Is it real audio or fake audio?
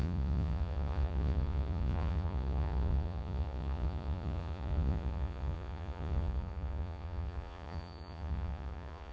fake